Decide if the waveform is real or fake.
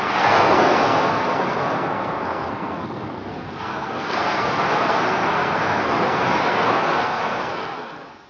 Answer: fake